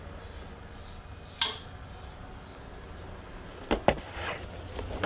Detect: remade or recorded recorded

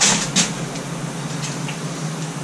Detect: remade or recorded recorded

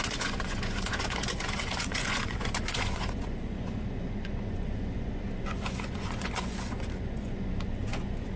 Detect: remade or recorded remade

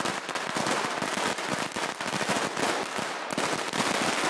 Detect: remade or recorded recorded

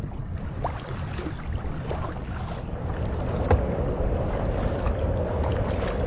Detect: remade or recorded recorded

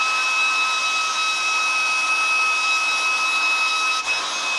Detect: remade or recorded recorded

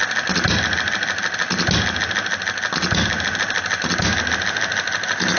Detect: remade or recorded recorded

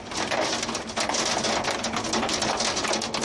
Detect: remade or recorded recorded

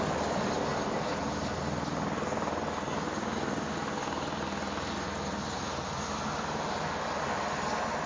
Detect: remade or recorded recorded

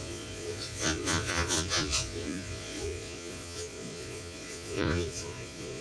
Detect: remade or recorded remade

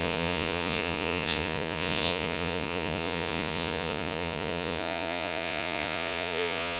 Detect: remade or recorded remade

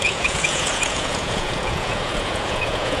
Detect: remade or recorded remade